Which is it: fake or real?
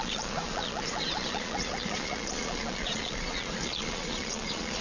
fake